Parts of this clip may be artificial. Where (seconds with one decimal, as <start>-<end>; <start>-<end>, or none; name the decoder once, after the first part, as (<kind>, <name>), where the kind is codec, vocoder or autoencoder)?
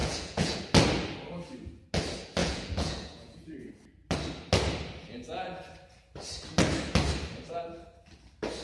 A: 0.0-0.6 (vocoder, Vocos); 2.4-3.7; 5.0-5.7